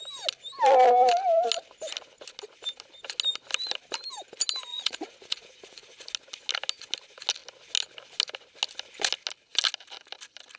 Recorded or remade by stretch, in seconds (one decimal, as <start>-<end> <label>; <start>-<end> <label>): 0.0-4.7 recorded; 4.7-6.0 remade; 6.0-10.6 recorded